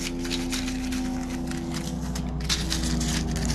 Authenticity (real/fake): real